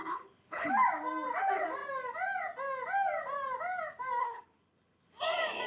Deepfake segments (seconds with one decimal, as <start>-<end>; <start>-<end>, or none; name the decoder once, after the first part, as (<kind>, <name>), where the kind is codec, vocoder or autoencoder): 0.0-0.7 (codec, HILCodec); 4.2-5.1